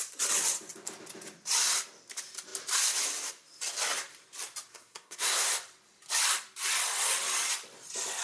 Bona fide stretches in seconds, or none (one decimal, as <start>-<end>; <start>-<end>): 0.0-4.7; 5.5-8.2

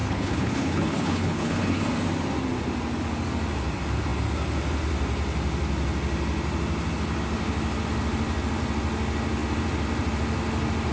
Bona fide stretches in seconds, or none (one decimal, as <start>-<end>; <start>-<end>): 1.8-10.9

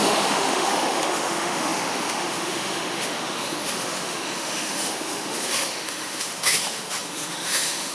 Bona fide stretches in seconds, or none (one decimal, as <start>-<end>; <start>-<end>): none

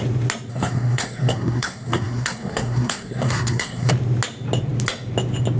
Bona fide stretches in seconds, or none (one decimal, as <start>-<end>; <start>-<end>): 0.0-0.5; 3.9-5.6